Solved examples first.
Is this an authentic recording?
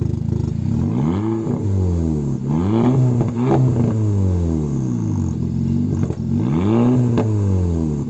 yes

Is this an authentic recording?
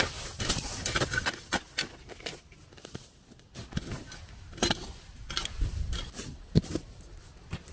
yes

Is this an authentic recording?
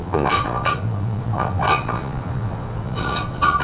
no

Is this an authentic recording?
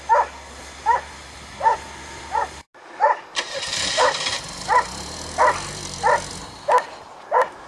yes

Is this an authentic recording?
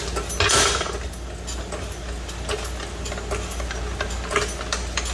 yes